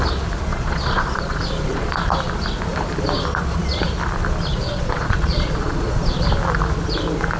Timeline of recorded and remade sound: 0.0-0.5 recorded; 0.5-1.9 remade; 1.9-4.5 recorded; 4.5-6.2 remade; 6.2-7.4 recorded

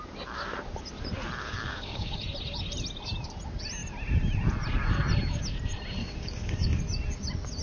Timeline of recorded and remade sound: 0.0-1.4 recorded; 1.4-2.2 remade; 2.2-6.0 recorded; 6.0-6.8 remade; 6.8-7.6 recorded

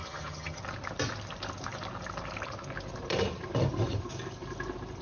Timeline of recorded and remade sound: 0.0-0.6 remade; 0.6-5.0 recorded

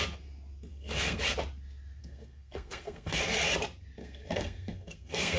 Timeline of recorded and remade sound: 0.0-0.7 recorded; 0.7-1.2 remade; 1.2-2.0 recorded; 2.0-3.2 remade; 3.2-4.0 recorded; 4.0-5.4 remade

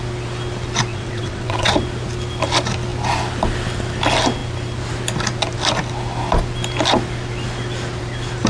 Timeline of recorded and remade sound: 0.0-0.9 recorded; 0.9-1.7 remade; 1.7-8.5 recorded

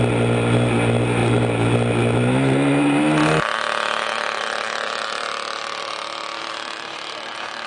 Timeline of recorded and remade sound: 0.0-7.7 recorded

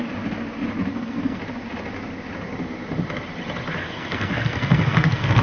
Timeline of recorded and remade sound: 0.0-0.9 recorded; 0.9-1.4 remade; 1.4-3.8 recorded; 3.8-5.4 remade

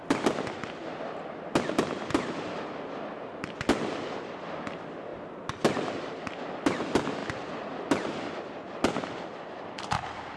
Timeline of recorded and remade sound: 0.0-10.4 recorded